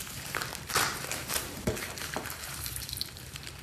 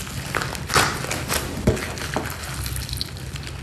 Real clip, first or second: second